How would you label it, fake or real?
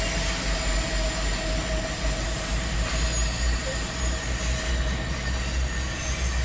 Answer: real